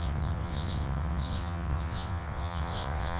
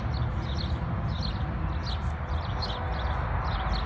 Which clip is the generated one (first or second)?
first